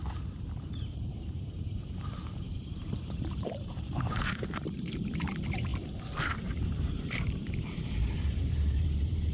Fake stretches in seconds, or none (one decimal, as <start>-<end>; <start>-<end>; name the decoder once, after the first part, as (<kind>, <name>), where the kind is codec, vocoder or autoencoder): 0.0-5.7 (vocoder, BigVGAN v2); 6.2-9.3